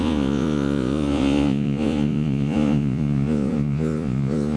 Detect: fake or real fake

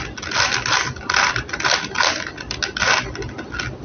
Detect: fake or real real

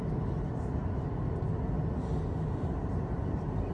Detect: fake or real real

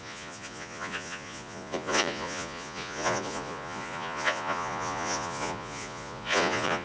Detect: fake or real fake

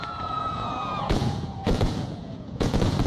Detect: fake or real fake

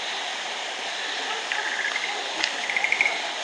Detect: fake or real real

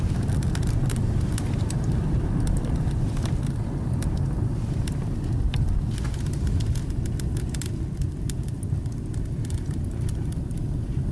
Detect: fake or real real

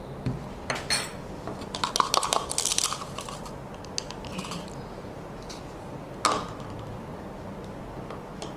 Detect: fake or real real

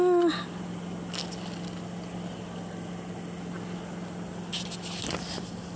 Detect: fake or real real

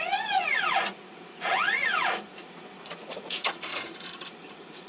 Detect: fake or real fake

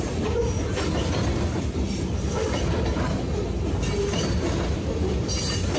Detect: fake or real real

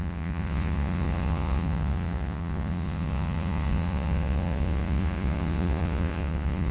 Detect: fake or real fake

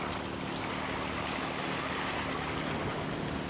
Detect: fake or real real